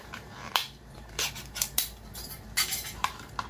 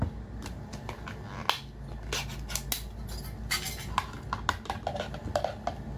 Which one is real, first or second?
second